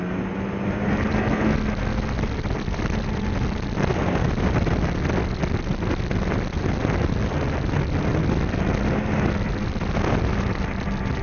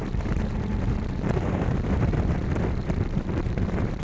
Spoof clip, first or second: second